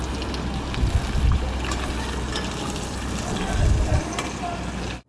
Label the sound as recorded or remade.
recorded